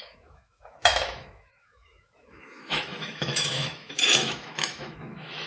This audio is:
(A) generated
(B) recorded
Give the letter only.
A